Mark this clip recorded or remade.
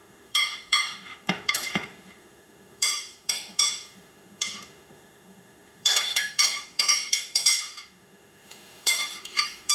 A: remade